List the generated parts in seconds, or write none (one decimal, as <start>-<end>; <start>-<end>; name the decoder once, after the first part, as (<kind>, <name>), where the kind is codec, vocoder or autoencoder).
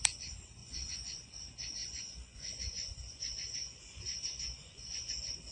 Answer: 0.6-1.3 (vocoder, Vocos); 1.8-5.1